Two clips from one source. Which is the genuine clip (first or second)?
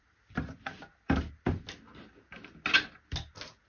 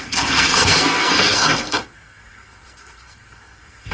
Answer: first